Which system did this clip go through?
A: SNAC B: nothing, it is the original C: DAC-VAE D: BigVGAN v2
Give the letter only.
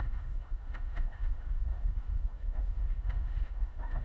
C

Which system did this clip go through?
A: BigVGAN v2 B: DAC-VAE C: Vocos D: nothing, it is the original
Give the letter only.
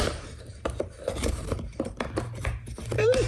A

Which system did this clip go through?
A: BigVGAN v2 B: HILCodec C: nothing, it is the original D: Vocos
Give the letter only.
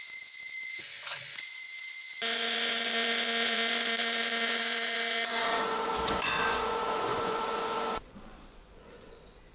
D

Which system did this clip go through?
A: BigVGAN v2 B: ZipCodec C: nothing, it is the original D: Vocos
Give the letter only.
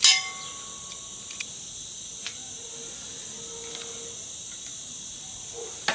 C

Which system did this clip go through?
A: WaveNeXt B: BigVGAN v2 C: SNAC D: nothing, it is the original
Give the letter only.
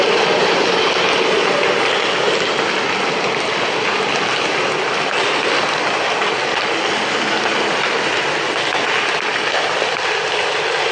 D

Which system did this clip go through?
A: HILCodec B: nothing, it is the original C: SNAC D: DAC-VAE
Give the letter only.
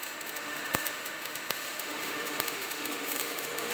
D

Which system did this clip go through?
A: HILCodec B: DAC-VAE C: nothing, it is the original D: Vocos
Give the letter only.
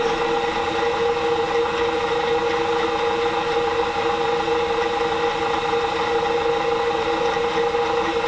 C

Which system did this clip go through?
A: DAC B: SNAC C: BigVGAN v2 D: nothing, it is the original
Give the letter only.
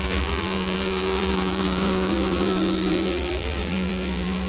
C